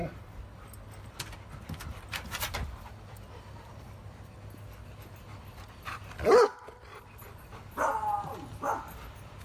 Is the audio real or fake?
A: real